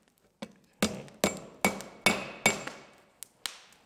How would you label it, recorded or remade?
recorded